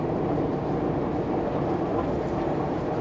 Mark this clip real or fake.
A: real